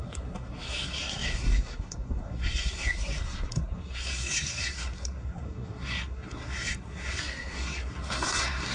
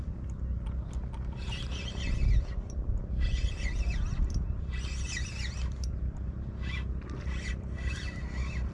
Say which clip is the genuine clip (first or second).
second